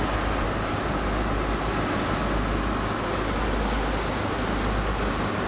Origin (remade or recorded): recorded